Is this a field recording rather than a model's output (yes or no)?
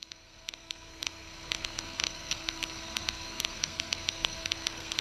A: no